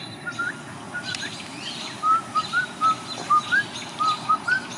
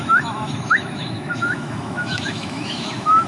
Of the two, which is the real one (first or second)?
first